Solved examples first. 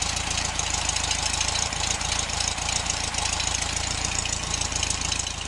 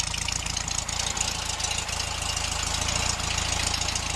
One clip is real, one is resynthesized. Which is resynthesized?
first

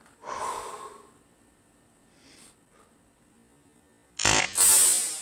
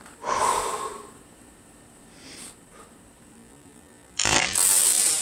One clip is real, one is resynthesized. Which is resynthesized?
second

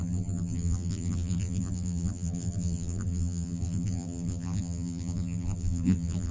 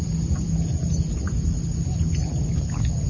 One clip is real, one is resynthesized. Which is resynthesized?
first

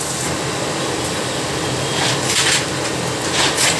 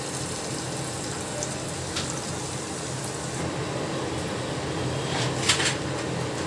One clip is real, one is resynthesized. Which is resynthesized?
first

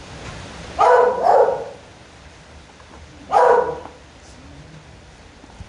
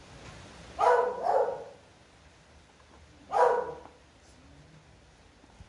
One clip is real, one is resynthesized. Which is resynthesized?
first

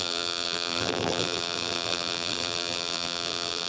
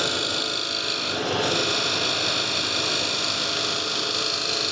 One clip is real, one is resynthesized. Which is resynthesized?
first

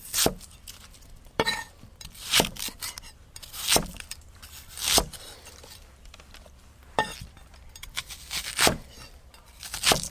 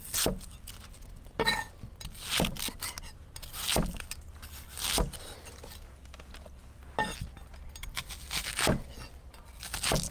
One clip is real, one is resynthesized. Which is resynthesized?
first